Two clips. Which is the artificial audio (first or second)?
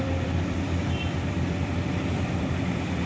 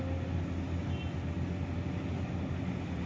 first